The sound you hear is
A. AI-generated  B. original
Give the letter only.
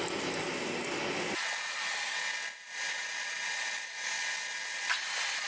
B